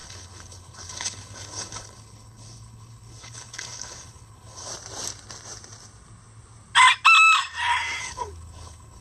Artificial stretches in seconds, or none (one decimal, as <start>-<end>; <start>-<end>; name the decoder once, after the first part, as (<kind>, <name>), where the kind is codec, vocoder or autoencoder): 0.0-4.7 (codec, HILCodec); 8.0-9.0